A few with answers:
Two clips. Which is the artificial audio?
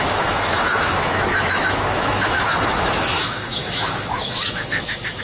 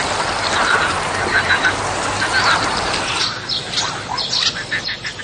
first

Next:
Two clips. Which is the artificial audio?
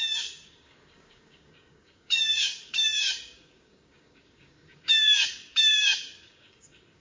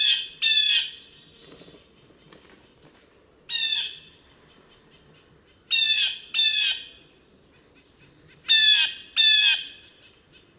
first